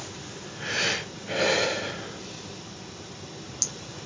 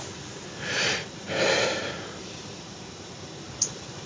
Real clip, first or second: first